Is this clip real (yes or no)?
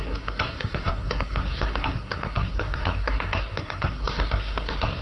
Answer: no